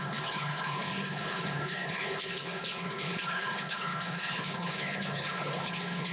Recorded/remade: remade